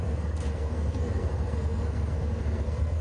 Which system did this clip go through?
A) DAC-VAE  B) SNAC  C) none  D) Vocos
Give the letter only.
B